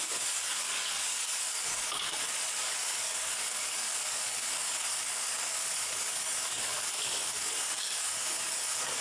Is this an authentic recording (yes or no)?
no